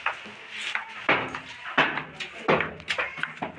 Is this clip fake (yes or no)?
no